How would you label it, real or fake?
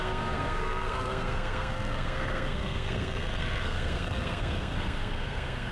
fake